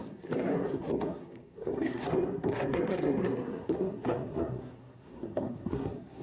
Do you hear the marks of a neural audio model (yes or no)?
yes